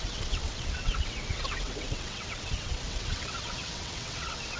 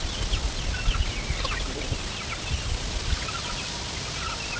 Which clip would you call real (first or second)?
second